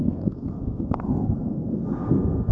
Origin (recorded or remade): remade